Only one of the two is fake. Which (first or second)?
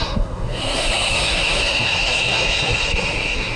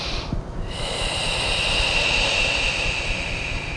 first